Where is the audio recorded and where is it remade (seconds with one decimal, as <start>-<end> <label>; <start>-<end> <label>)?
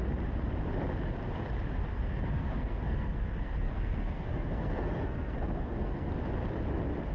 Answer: 0.0-1.9 recorded; 1.9-6.1 remade; 6.1-7.1 recorded